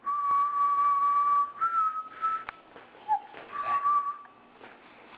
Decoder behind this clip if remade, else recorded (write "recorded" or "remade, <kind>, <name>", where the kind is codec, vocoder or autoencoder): recorded